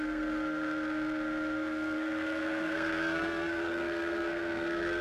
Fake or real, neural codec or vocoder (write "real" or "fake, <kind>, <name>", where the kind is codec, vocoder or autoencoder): fake, codec, SNAC